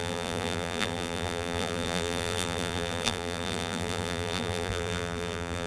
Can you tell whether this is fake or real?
fake